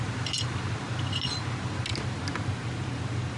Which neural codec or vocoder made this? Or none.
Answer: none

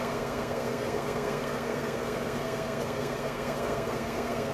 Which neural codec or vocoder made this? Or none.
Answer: codec, SNAC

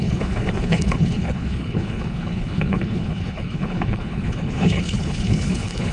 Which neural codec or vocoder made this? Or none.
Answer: codec, HILCodec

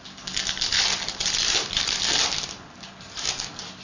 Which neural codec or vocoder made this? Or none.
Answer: none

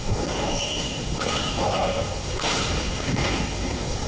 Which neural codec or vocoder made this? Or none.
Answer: codec, SNAC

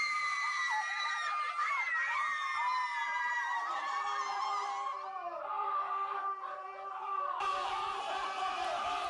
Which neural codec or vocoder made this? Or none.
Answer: vocoder, BigVGAN v2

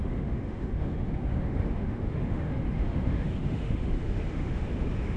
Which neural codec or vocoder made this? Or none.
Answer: autoencoder, DAC-VAE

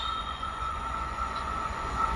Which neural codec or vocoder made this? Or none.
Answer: vocoder, Vocos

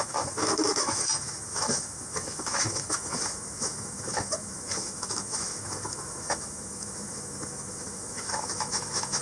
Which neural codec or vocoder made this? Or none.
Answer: autoencoder, DAC-VAE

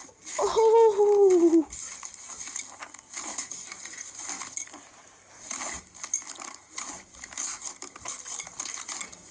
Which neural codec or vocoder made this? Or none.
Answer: none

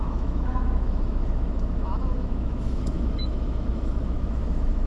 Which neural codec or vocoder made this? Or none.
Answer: autoencoder, DAC-VAE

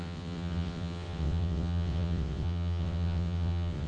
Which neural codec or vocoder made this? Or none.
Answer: vocoder, WaveNeXt